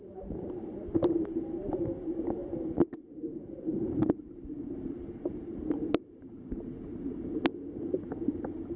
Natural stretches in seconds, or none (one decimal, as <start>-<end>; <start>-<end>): 7.5-8.0